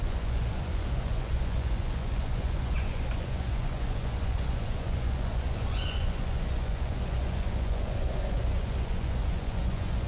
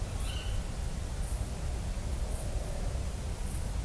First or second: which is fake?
first